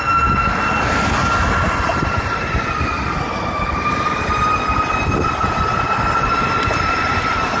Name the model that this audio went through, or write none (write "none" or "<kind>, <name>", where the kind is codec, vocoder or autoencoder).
none